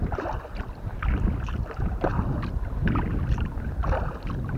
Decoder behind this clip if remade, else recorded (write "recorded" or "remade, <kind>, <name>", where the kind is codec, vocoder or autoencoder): recorded